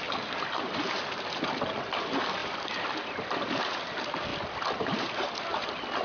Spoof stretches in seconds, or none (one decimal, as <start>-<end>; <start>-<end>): 2.4-3.6; 4.3-5.0